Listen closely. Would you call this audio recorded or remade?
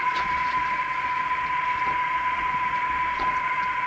remade